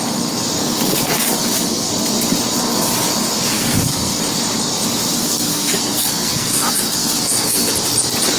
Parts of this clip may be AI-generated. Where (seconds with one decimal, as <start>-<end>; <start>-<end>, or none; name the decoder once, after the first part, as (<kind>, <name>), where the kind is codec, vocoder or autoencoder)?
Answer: 0.6-1.9 (codec, SNAC); 3.5-4.2; 5.2-7.7